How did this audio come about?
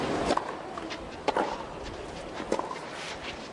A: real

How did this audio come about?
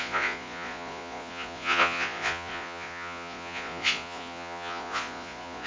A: fake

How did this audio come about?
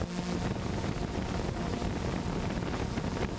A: real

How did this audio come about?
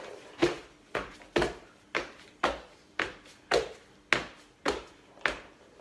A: real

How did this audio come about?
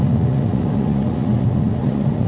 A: fake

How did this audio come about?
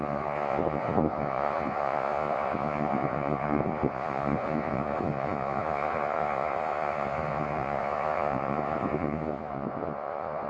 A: fake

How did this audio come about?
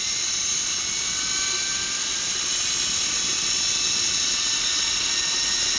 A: real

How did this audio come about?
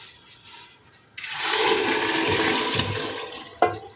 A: real